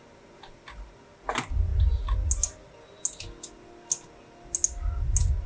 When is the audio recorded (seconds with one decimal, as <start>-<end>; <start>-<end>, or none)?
0.0-5.5